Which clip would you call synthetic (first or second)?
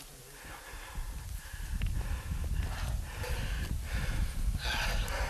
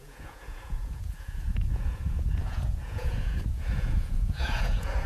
second